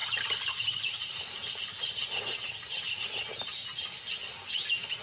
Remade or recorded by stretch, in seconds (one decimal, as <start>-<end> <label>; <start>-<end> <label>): 0.0-3.0 remade; 3.0-5.0 recorded